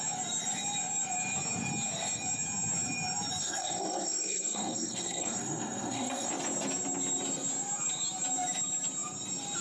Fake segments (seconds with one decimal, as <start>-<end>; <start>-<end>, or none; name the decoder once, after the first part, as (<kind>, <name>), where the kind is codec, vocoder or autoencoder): 3.4-6.3 (codec, SNAC)